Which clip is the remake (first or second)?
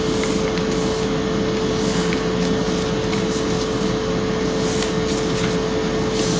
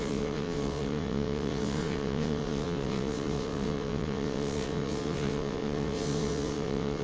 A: second